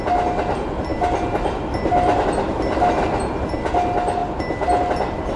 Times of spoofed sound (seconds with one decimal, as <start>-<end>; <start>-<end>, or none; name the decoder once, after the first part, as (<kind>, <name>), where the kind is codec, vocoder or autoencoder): none